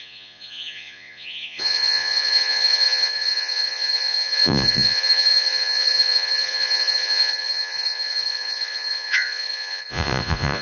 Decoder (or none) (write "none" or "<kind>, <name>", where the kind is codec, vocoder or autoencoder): vocoder, Vocos